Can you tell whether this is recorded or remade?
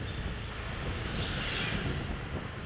recorded